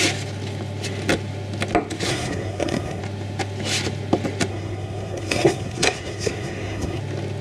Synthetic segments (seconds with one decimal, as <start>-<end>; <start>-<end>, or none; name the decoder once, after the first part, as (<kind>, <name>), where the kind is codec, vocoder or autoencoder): 2.1-3.0 (codec, SNAC); 4.5-7.0